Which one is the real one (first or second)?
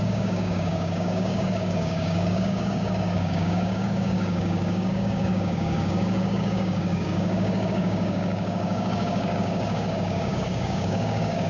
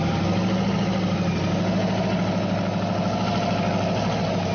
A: second